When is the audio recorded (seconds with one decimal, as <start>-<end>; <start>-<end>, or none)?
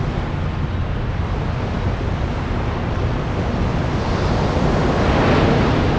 0.0-6.0